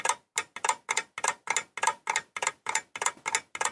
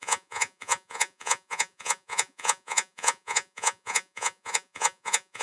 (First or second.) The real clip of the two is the first